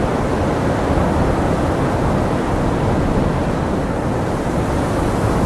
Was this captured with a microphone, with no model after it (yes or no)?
yes